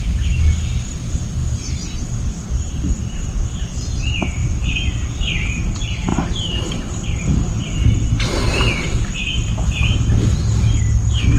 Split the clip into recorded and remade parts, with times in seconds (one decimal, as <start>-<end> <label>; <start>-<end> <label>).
0.0-4.4 recorded; 4.4-5.6 remade; 5.6-11.4 recorded